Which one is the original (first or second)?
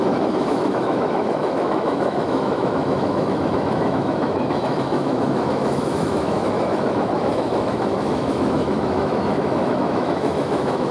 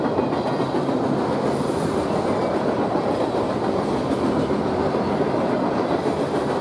second